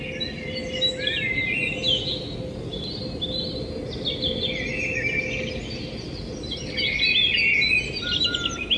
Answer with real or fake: real